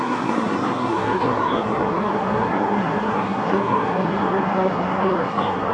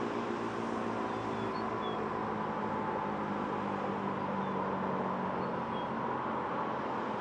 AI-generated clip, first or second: first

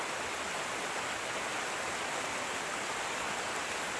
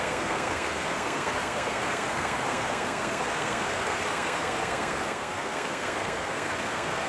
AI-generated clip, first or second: second